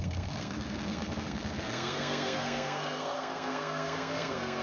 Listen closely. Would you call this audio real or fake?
fake